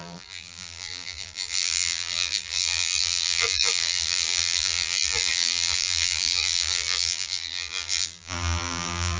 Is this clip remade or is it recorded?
remade